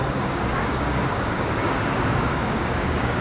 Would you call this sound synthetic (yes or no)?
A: yes